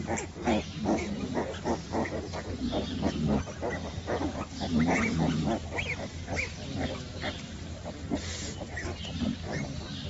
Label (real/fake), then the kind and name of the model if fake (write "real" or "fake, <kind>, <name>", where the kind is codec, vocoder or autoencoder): real